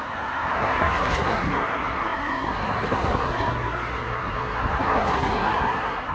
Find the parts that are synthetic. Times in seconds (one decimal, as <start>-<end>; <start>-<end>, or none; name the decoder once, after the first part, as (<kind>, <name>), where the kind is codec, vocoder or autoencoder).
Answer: 0.0-6.1 (codec, SNAC)